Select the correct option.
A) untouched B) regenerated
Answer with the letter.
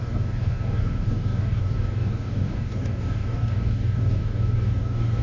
B